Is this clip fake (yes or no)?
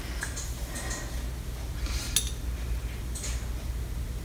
no